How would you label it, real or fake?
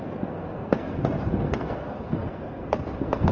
fake